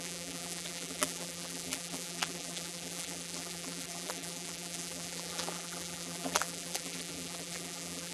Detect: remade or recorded remade